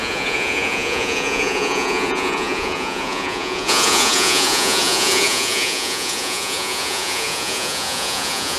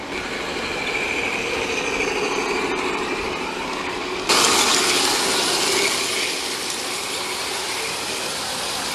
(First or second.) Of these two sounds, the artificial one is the first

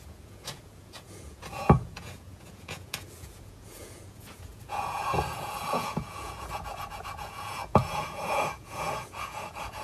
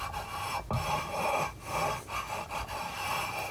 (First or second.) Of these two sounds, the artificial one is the first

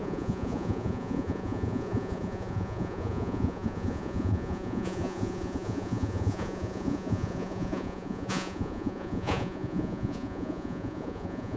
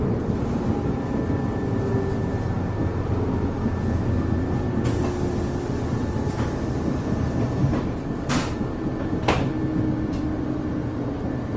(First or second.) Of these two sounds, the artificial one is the first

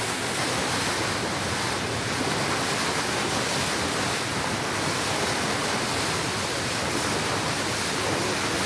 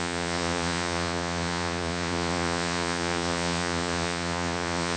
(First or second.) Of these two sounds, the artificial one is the second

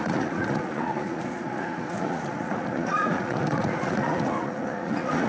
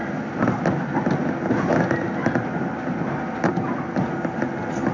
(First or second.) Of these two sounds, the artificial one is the first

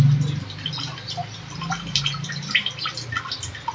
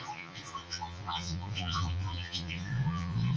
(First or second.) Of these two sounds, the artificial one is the second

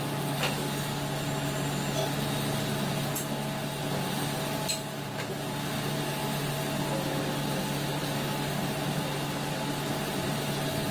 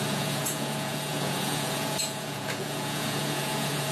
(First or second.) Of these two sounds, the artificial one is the second